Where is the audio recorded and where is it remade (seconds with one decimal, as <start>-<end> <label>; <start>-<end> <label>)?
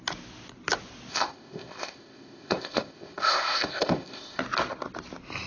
0.0-1.1 recorded; 1.1-4.4 remade; 4.4-5.5 recorded